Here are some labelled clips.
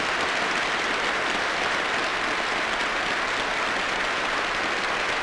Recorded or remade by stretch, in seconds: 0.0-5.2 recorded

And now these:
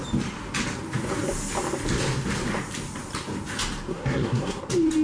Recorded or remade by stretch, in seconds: 0.0-3.9 recorded; 3.9-4.6 remade; 4.6-5.0 recorded